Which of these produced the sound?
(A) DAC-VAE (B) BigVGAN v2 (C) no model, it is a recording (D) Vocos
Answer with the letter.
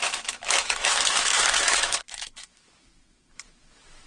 A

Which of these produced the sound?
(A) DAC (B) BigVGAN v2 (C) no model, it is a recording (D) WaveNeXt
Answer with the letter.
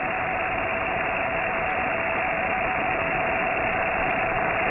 C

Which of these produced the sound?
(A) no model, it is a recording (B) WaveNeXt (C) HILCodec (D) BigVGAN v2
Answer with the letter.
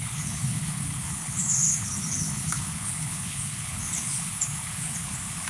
C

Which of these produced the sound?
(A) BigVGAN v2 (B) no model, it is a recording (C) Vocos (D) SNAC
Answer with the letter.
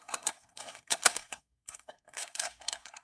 D